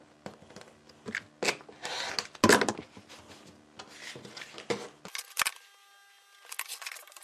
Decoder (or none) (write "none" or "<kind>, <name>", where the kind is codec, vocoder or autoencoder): none